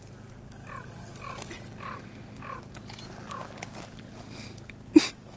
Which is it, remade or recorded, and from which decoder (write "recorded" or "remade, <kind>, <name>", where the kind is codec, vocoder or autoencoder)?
recorded